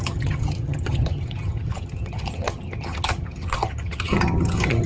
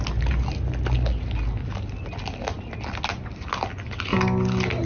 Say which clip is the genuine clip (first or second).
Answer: second